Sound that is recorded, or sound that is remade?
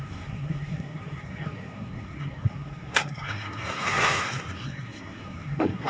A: remade